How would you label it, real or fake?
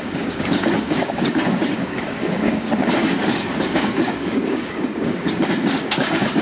fake